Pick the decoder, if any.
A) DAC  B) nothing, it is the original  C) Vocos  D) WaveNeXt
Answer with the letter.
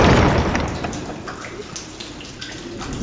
B